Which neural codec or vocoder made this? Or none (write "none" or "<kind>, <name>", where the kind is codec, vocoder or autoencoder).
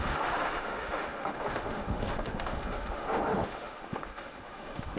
autoencoder, DAC-VAE